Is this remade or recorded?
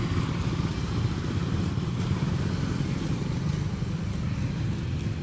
recorded